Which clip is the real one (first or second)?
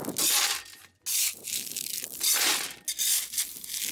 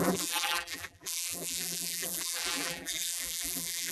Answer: first